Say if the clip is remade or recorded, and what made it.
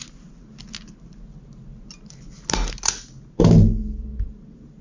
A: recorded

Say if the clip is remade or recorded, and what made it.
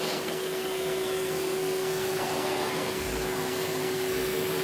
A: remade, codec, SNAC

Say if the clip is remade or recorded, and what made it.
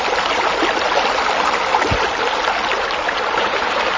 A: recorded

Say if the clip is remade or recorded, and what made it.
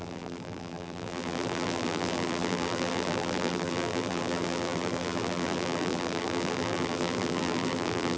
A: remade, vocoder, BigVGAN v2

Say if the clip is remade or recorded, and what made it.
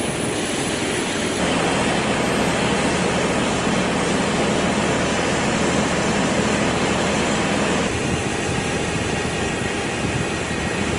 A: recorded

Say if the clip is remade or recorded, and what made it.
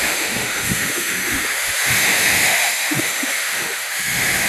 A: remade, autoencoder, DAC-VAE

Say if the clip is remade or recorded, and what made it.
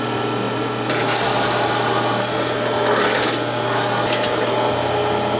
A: recorded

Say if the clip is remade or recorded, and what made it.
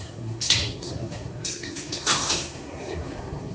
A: remade, codec, SNAC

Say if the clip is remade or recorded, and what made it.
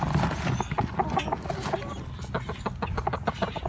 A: recorded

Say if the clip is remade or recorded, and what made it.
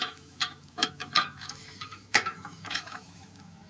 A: remade, autoencoder, DAC-VAE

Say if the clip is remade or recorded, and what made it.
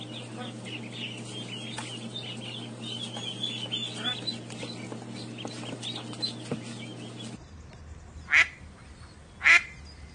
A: recorded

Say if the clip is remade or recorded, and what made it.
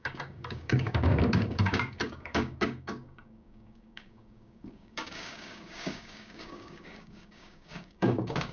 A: remade, codec, DAC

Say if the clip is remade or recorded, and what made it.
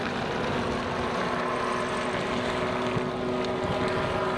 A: recorded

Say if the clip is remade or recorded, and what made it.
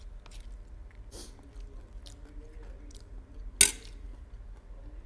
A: recorded